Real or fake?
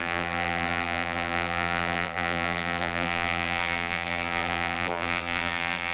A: fake